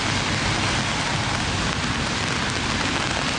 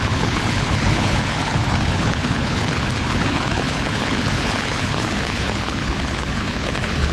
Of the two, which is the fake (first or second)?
second